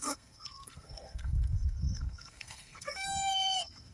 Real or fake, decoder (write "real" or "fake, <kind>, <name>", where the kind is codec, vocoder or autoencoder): fake, codec, SNAC